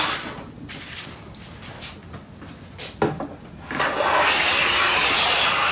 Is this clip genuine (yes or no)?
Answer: yes